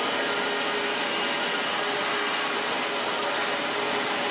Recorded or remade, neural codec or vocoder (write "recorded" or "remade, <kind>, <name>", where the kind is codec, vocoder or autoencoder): recorded